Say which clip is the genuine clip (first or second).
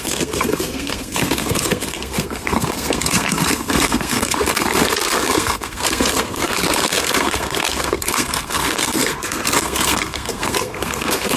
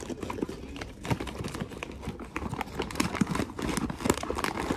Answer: second